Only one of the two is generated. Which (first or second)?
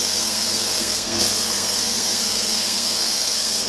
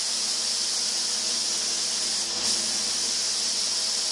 first